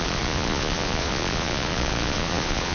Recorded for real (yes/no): no